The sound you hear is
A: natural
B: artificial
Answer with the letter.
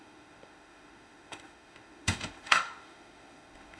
B